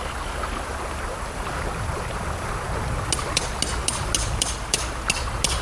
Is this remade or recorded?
recorded